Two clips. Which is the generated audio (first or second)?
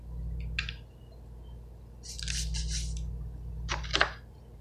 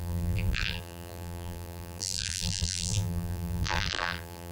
second